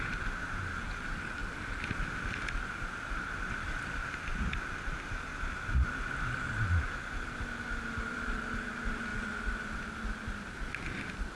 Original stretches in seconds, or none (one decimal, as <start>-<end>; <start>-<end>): 0.0-11.4